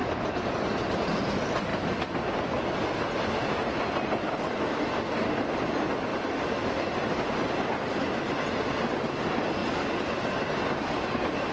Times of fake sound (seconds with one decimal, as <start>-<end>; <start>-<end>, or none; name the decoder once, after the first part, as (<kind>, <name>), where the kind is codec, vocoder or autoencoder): 0.0-1.0 (vocoder, BigVGAN v2); 6.1-7.3